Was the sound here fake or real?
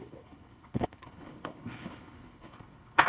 fake